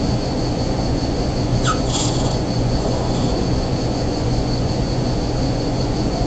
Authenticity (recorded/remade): remade